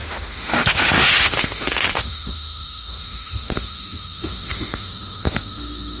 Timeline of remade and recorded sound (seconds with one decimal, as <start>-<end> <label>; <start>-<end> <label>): 0.0-6.0 remade